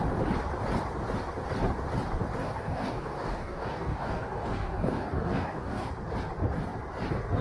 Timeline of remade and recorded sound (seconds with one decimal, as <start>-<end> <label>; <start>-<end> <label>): 0.0-2.4 recorded; 2.4-5.9 remade; 5.9-7.4 recorded